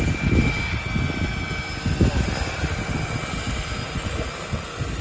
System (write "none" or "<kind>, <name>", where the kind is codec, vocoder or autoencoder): none